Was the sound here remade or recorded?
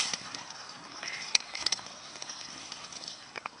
remade